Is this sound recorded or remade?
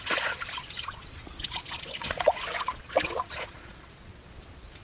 remade